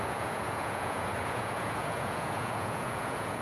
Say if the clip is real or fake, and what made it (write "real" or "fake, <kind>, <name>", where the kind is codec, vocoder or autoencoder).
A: fake, vocoder, Vocos